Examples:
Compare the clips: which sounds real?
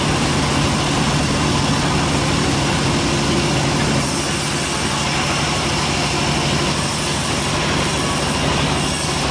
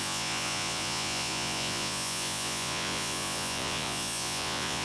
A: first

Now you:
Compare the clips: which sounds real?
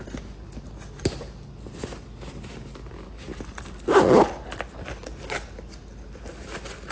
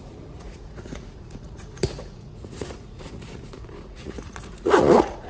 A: first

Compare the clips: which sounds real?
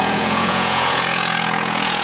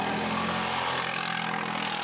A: second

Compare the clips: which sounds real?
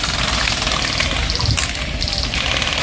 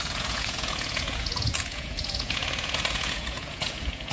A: first